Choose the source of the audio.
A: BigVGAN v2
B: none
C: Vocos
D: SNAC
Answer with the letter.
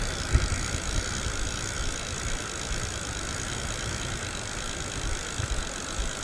B